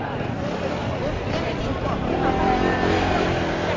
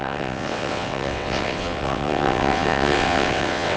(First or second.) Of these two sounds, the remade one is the second